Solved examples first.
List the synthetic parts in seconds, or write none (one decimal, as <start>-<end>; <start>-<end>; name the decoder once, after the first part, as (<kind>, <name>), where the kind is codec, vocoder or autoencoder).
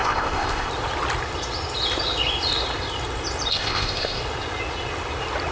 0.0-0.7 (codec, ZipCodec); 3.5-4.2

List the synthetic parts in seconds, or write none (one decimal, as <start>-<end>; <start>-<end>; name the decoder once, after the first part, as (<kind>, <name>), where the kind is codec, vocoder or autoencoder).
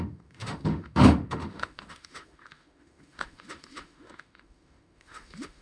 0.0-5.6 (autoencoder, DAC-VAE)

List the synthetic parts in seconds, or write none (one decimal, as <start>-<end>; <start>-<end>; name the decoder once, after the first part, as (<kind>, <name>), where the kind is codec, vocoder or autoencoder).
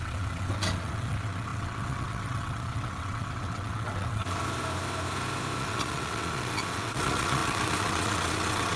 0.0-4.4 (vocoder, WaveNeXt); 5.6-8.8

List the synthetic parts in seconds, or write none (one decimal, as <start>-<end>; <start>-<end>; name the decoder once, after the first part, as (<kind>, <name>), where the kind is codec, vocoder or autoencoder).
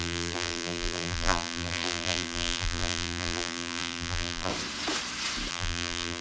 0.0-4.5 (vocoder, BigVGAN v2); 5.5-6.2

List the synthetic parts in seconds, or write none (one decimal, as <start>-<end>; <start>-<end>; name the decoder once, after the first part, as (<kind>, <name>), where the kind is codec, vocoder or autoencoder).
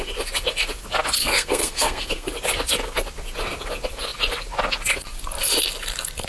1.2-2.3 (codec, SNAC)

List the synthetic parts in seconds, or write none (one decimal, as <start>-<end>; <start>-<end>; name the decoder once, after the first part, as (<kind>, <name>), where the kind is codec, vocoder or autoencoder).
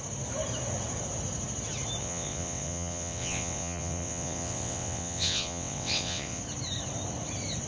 2.0-6.4 (vocoder, WaveNeXt)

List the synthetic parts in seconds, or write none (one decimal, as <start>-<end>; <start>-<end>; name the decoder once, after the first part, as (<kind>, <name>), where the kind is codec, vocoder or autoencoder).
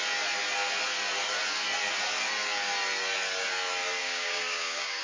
4.0-5.0 (codec, DAC)